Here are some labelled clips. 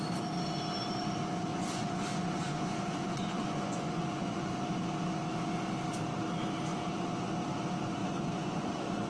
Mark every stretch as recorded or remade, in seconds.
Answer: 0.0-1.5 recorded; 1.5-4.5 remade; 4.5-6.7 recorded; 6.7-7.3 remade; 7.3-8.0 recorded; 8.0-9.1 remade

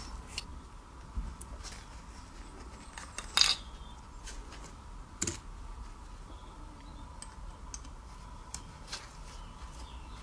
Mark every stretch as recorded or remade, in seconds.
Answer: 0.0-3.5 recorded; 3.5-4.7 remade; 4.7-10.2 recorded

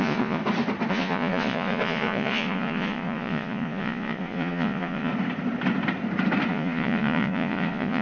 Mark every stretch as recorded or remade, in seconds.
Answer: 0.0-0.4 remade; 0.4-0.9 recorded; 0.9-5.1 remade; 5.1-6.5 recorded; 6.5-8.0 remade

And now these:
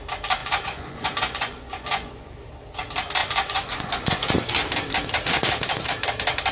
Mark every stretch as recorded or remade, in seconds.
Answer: 0.0-0.4 recorded; 0.4-2.3 remade; 2.3-3.2 recorded; 3.2-4.6 remade; 4.6-6.5 recorded